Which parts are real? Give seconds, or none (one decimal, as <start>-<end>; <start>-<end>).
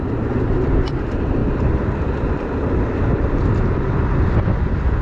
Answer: none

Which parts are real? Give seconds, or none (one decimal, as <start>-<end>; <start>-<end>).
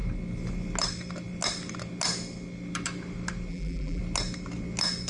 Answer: 0.0-3.5; 4.0-5.1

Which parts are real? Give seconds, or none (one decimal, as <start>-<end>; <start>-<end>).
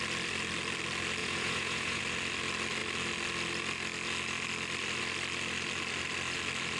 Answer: 0.0-1.2; 2.0-6.8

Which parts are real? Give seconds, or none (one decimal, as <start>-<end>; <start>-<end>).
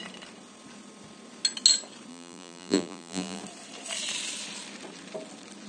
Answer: 0.0-2.1; 3.4-5.7